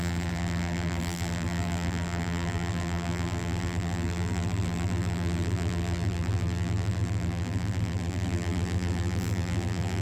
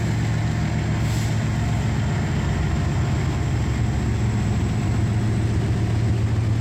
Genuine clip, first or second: second